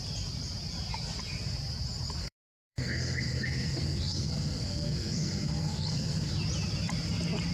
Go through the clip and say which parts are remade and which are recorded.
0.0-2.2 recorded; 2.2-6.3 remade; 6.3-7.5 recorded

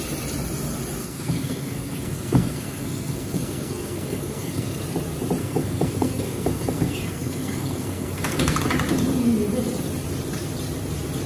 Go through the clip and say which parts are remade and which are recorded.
0.0-1.0 recorded; 1.0-4.8 remade; 4.8-5.4 recorded; 5.4-8.6 remade; 8.6-11.3 recorded

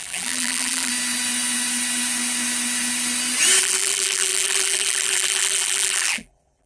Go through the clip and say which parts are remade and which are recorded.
0.0-0.9 remade; 0.9-3.6 recorded; 3.6-6.7 remade

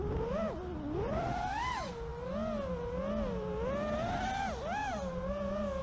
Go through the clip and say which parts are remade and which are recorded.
0.0-5.8 recorded